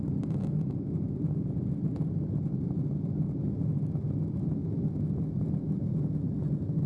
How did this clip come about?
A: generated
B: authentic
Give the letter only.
B